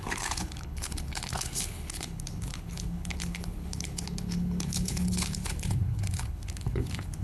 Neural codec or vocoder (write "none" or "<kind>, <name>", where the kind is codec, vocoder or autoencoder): codec, HILCodec